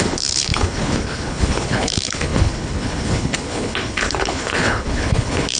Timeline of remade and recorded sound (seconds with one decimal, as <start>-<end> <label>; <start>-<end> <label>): 0.0-5.6 remade